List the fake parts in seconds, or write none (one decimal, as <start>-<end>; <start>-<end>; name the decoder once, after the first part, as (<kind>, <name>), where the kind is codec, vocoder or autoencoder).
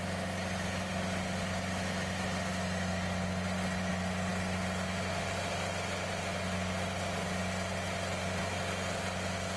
none